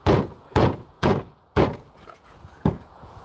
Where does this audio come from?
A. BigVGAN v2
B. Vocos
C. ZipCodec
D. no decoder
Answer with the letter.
B